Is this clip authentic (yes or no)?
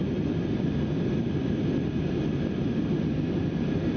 yes